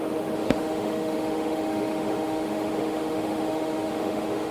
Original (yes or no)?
no